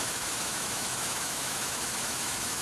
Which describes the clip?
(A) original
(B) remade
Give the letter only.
B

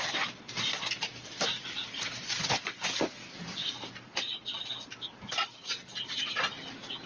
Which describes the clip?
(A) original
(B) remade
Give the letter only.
A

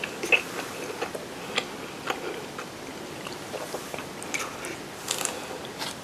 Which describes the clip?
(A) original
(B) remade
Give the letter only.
A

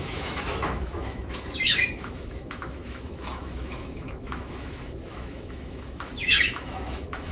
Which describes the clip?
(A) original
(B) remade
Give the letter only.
B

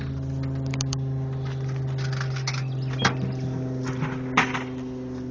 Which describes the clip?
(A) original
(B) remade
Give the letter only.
A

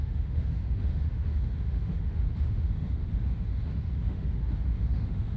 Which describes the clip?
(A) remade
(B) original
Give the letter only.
A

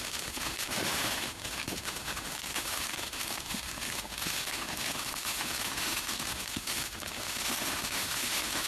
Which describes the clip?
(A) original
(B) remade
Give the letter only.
B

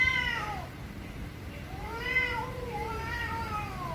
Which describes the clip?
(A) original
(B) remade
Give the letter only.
A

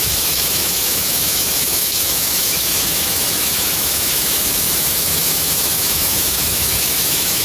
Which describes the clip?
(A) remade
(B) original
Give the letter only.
A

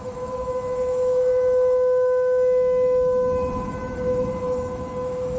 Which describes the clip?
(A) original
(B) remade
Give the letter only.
B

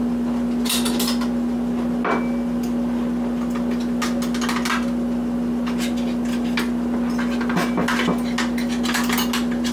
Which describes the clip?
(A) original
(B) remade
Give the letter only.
A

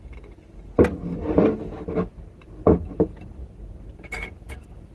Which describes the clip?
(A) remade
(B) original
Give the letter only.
B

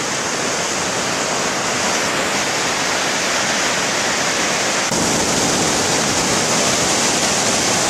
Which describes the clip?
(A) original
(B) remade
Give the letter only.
A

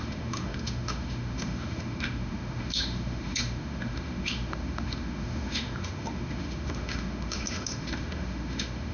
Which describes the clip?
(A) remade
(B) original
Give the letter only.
A